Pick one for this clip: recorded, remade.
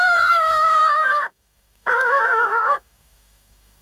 remade